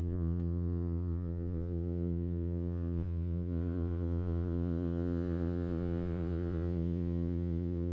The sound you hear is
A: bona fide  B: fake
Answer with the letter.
B